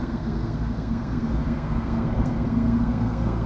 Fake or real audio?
fake